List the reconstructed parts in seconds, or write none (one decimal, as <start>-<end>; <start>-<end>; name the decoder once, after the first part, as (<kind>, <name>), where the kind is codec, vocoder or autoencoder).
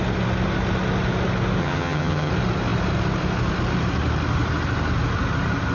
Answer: 1.6-2.3 (vocoder, HiFi-GAN)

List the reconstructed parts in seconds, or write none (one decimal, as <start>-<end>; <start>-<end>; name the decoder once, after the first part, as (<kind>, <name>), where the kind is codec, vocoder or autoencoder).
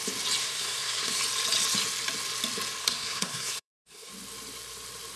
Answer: 0.4-1.2 (codec, SNAC); 2.8-4.1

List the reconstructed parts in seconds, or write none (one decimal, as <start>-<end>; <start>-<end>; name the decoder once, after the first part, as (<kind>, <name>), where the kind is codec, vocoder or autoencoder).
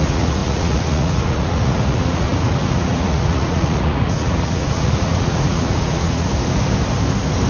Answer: 0.0-6.3 (vocoder, Vocos)